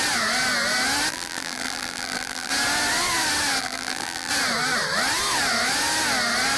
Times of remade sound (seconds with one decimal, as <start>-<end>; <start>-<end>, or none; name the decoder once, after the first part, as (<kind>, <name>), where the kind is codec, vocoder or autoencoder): 1.1-2.5 (vocoder, BigVGAN v2); 3.6-4.3